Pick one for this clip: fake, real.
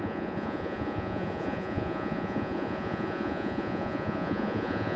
fake